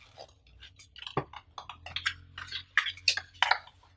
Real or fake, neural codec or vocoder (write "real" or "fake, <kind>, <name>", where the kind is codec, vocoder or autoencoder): real